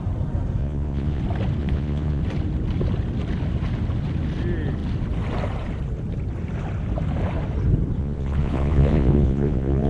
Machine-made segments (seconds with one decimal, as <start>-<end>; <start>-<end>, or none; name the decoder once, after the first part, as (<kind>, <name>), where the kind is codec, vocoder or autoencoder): 0.6-1.2 (vocoder, Vocos); 1.6-2.2; 8.0-9.9